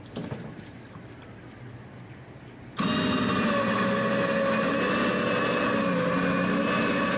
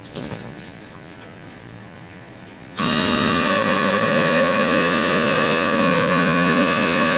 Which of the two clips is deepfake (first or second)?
second